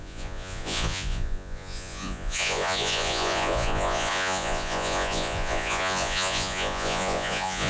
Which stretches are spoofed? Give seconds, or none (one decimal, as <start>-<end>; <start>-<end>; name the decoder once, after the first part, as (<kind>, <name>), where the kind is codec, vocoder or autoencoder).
0.0-7.7 (vocoder, Vocos)